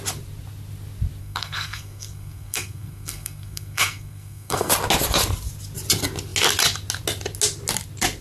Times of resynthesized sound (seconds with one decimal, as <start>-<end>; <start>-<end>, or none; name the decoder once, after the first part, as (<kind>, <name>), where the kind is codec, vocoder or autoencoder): 1.2-4.7 (codec, SNAC)